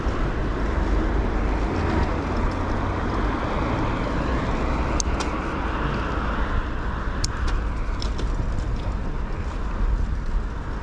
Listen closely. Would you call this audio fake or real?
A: real